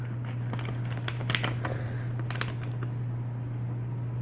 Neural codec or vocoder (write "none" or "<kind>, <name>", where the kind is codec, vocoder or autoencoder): none